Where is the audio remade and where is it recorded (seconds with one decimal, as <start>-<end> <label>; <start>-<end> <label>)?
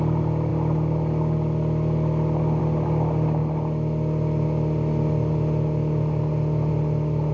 0.0-7.3 recorded